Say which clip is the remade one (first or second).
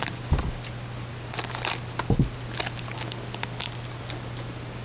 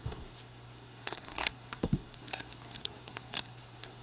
second